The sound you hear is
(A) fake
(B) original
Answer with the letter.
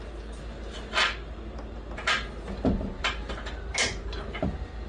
B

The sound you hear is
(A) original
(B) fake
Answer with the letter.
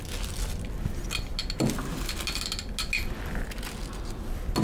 A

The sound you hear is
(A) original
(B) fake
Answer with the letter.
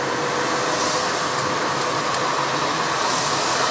A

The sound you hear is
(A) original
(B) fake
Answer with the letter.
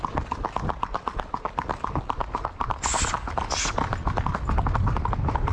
A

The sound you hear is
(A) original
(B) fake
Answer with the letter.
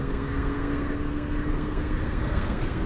B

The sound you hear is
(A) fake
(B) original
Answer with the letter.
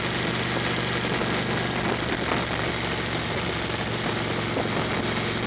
B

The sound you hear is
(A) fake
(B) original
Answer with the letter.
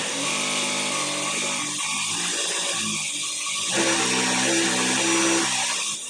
B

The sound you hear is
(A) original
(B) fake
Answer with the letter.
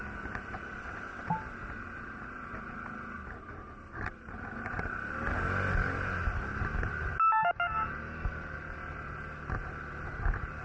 A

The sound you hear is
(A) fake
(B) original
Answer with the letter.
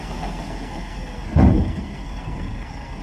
A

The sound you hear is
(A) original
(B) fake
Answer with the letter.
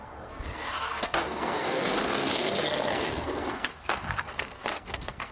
B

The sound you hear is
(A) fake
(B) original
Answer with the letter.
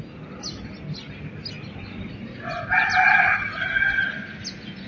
B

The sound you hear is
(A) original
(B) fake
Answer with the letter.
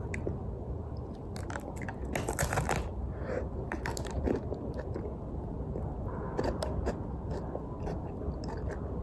A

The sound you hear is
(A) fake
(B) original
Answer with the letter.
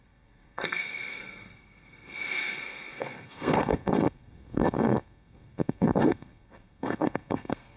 A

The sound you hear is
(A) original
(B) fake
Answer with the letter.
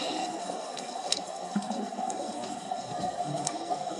B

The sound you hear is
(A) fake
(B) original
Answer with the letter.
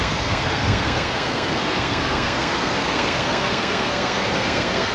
A